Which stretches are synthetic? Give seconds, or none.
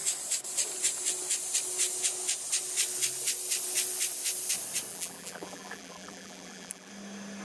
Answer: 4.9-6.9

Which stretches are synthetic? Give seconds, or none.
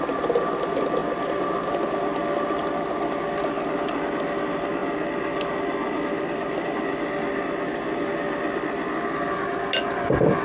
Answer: none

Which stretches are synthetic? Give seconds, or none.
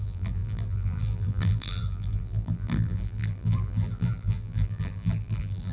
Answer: 0.0-5.7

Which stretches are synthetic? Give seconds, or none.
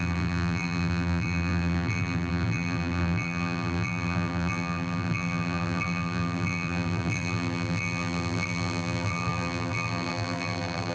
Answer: 0.0-10.9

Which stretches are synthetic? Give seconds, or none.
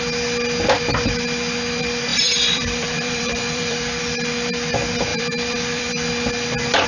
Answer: 2.1-4.0; 5.1-5.9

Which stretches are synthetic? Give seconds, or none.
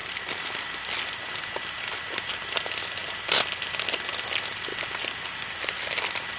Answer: 0.0-2.3; 4.7-6.4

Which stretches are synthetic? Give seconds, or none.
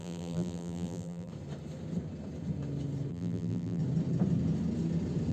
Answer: 0.0-1.3; 3.1-3.8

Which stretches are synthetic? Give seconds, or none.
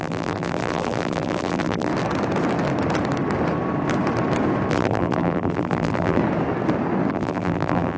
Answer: 0.0-1.9; 4.7-6.2; 7.1-8.0